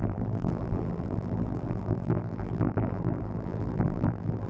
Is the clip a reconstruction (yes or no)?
yes